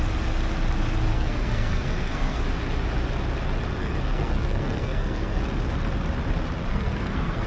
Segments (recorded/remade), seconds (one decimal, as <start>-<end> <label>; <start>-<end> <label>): 0.0-1.1 recorded; 1.1-2.4 remade; 2.4-3.8 recorded; 3.8-5.4 remade; 5.4-6.7 recorded; 6.7-7.5 remade